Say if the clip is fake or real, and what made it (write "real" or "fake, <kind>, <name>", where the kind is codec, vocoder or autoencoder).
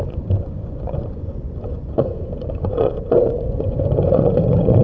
fake, vocoder, Vocos